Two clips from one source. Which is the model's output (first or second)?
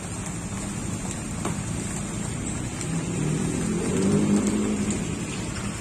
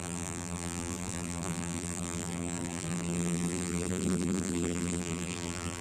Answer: second